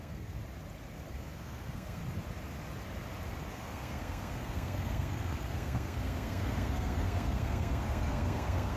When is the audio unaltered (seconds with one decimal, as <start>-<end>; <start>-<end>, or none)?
0.4-1.1; 2.0-3.5